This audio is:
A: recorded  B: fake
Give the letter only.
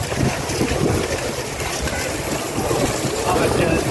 B